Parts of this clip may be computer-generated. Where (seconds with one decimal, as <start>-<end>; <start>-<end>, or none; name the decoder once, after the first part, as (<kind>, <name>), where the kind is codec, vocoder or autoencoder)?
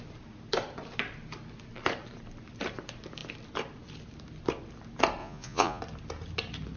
5.2-5.8 (vocoder, Vocos)